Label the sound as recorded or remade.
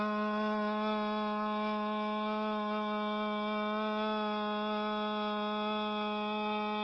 recorded